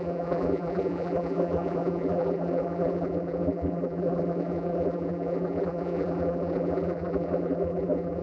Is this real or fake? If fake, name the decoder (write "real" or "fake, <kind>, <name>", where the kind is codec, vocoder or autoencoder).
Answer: fake, vocoder, BigVGAN v2